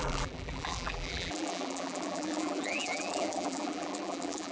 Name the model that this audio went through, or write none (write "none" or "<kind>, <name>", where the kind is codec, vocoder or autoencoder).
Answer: vocoder, BigVGAN v2